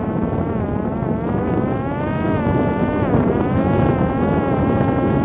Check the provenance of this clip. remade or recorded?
recorded